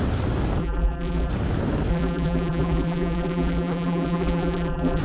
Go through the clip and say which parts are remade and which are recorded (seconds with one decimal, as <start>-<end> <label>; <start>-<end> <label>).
0.0-0.6 recorded; 0.6-1.3 remade; 1.3-1.9 recorded; 1.9-5.0 remade